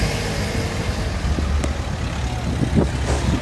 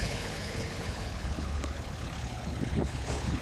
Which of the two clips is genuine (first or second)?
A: first